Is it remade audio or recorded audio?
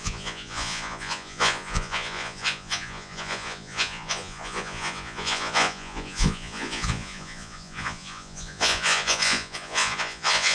remade